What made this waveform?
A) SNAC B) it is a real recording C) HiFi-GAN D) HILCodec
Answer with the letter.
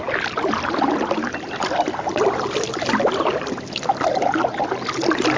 B